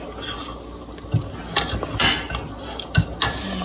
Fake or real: real